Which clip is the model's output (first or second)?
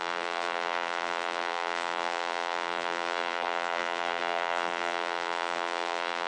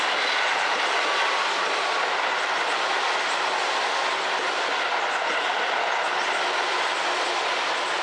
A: first